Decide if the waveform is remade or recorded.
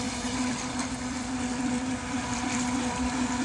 remade